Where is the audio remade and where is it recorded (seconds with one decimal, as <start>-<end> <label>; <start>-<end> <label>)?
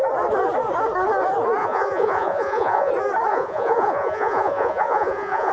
0.0-1.6 recorded; 1.6-2.9 remade; 2.9-3.3 recorded; 3.3-5.5 remade